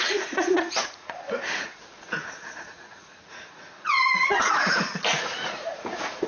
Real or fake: fake